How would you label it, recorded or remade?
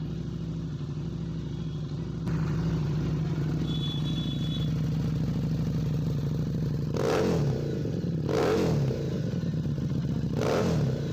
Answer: recorded